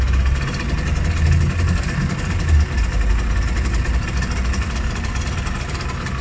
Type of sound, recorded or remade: recorded